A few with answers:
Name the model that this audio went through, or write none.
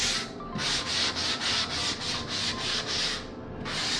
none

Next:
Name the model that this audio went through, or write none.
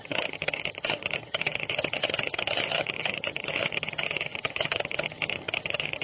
vocoder, HiFi-GAN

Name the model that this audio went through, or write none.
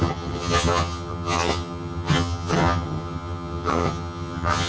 vocoder, HiFi-GAN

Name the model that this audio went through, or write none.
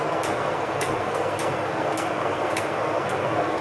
codec, SNAC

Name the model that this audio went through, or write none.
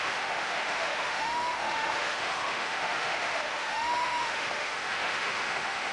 autoencoder, DAC-VAE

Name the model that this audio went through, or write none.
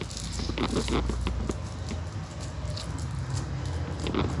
none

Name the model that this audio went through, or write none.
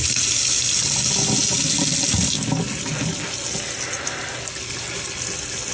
none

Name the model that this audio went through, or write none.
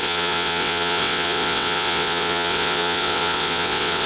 vocoder, WaveNeXt